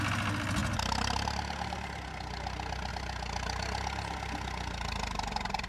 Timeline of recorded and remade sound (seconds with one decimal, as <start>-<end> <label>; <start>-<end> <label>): 0.0-5.7 recorded